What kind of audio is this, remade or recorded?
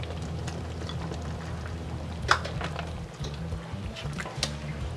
recorded